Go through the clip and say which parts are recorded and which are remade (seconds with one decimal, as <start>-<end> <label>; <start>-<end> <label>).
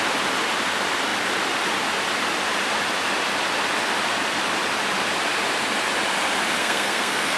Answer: 0.0-6.6 recorded; 6.6-7.4 remade